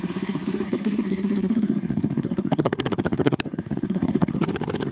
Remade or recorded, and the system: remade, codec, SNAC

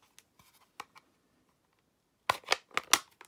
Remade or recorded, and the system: recorded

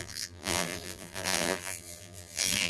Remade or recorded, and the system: remade, vocoder, BigVGAN v2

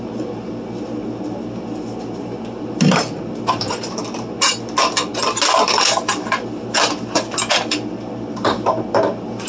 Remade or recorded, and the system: recorded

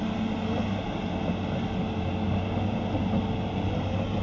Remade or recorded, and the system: recorded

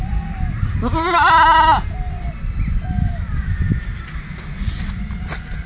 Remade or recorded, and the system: recorded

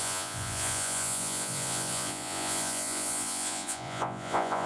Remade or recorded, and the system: remade, vocoder, Vocos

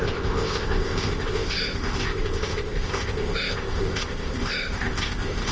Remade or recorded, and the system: remade, codec, ZipCodec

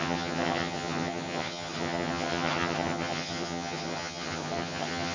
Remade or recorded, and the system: remade, vocoder, HiFi-GAN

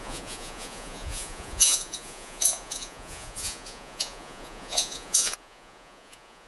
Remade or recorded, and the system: remade, vocoder, Vocos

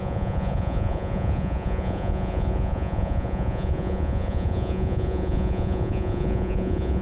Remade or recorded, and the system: remade, vocoder, Vocos